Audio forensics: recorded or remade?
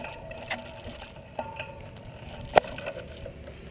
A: recorded